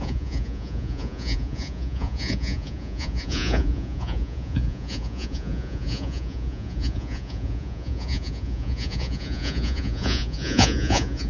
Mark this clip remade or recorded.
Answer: remade